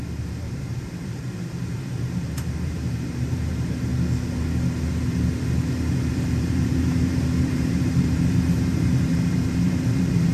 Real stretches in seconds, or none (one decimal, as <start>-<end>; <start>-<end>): 3.9-6.1